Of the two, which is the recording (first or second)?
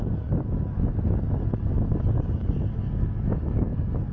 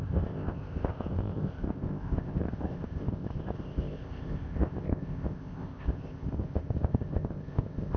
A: first